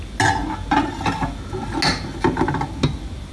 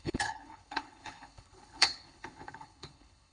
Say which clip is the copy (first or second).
second